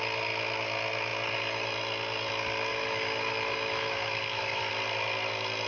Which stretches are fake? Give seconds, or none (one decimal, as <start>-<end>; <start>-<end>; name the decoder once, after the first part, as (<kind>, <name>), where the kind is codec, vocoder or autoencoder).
2.7-4.7 (autoencoder, DAC-VAE)